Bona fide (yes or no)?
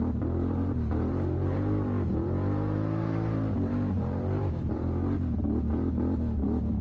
no